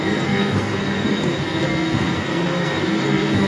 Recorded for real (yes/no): no